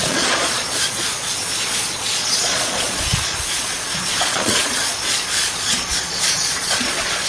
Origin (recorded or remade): remade